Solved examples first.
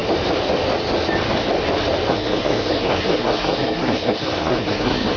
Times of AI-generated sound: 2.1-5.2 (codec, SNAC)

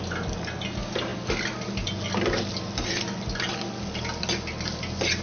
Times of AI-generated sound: none

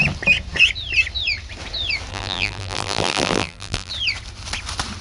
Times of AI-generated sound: 2.1-3.9 (vocoder, BigVGAN v2)

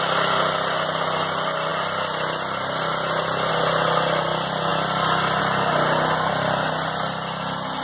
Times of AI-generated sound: none

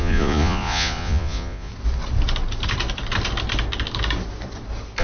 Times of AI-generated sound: 0.0-1.7 (vocoder, Vocos)

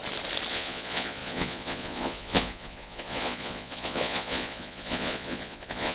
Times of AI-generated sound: 0.5-5.9 (vocoder, Vocos)